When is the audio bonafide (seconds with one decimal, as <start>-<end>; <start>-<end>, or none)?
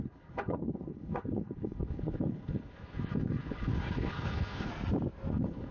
4.7-5.3